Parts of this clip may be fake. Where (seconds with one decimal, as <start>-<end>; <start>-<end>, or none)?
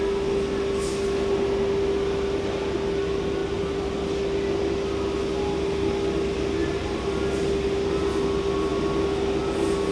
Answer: none